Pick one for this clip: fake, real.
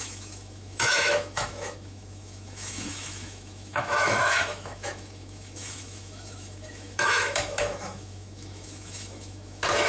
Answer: fake